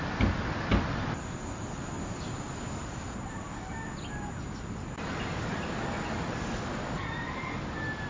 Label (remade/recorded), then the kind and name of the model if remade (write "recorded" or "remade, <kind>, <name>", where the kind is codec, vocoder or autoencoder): recorded